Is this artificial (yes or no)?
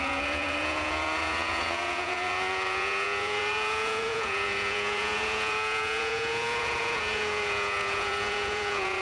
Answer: yes